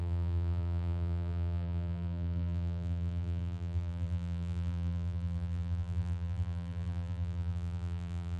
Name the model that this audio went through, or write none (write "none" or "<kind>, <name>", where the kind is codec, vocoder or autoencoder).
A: vocoder, BigVGAN v2